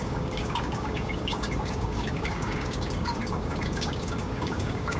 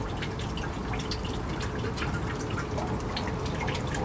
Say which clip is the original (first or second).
second